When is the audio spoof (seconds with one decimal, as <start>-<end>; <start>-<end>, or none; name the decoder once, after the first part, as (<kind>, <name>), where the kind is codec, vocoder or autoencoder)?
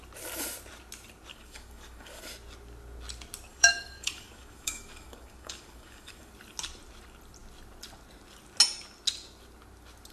1.3-2.2 (codec, DAC); 3.5-6.3